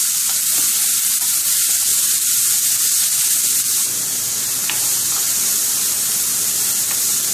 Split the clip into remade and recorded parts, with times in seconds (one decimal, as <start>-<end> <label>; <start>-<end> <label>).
0.0-7.3 recorded